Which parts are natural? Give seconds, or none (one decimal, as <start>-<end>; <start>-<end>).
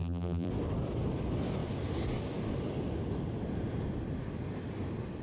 0.5-5.2